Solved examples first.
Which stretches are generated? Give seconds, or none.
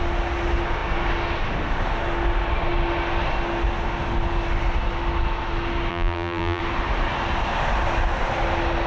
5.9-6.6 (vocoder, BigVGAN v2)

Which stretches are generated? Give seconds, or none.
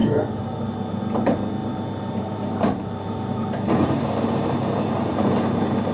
0.0-1.0 (vocoder, BigVGAN v2); 1.6-5.1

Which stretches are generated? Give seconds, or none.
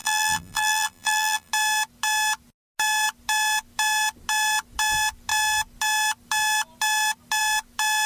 0.0-1.5 (vocoder, BigVGAN v2)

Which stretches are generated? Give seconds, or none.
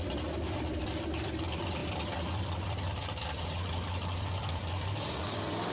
0.8-5.7 (vocoder, BigVGAN v2)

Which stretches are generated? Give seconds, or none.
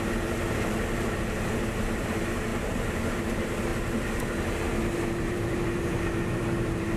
0.0-3.7 (vocoder, BigVGAN v2); 4.2-7.0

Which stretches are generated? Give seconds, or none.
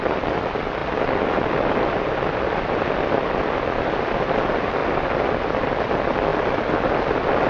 none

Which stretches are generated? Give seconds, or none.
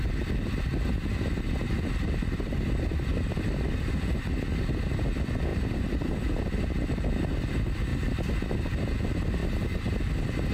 1.6-3.1 (vocoder, BigVGAN v2); 5.5-6.5